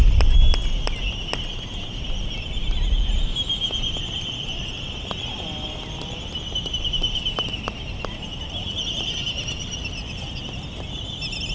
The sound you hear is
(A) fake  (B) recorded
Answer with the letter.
B